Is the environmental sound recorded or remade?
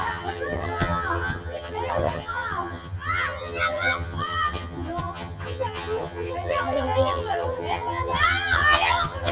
remade